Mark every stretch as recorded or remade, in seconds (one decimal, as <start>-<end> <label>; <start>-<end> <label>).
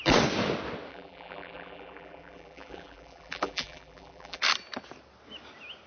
0.0-0.9 recorded; 0.9-4.4 remade; 4.4-5.9 recorded